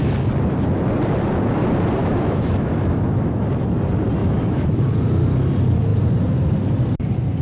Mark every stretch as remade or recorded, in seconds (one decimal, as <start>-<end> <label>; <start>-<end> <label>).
0.0-2.0 recorded; 2.0-3.5 remade; 3.5-4.2 recorded; 4.2-4.8 remade; 4.8-7.4 recorded